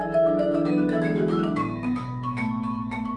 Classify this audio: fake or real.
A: fake